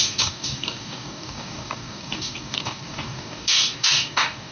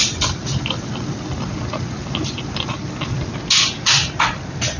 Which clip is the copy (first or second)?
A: first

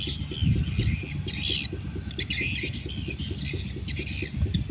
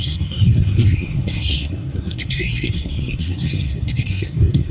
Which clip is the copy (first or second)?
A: second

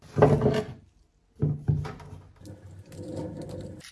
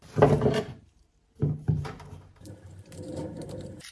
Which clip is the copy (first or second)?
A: second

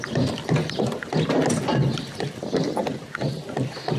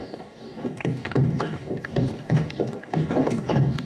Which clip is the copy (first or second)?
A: second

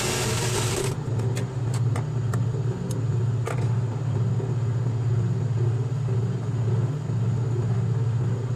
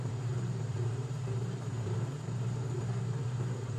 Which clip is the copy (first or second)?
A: second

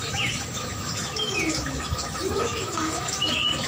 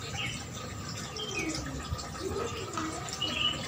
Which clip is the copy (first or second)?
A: first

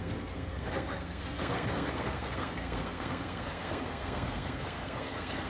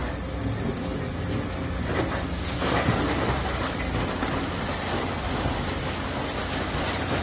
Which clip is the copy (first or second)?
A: first